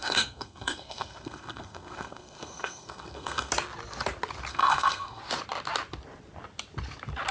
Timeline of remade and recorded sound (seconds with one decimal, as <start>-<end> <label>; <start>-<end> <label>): 0.0-3.5 remade; 3.5-4.5 recorded; 4.5-5.2 remade; 5.2-7.3 recorded